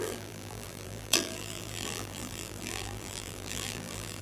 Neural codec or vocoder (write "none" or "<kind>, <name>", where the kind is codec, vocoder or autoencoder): vocoder, BigVGAN v2